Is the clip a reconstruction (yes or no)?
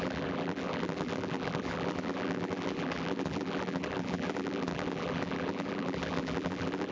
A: yes